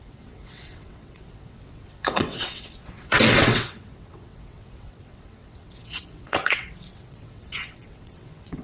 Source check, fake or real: fake